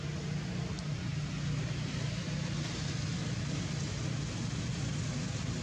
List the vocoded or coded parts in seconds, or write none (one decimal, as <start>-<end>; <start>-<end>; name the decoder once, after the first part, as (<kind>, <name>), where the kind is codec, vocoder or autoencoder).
none

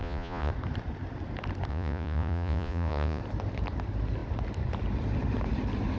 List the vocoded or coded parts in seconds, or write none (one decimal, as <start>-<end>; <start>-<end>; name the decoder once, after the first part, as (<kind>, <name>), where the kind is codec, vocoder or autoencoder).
0.0-0.5 (vocoder, Vocos); 1.7-3.2